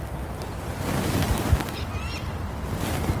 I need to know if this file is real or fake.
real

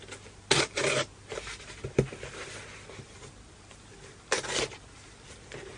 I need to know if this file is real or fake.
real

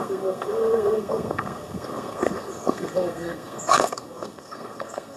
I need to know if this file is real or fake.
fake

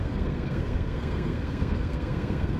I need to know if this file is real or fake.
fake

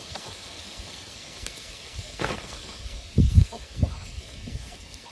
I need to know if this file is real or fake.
fake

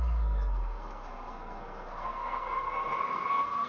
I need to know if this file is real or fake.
fake